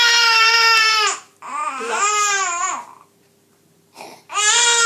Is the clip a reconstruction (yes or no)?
no